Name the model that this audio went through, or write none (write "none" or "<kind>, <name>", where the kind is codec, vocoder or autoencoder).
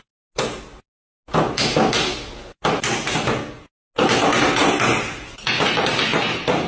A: none